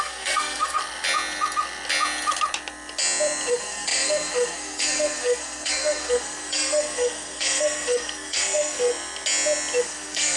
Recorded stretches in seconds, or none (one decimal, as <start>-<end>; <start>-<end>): 0.8-3.5; 8.9-9.8